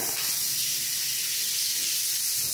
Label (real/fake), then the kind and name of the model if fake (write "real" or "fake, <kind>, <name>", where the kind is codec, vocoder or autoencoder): real